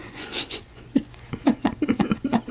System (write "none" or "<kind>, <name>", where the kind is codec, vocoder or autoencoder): vocoder, Vocos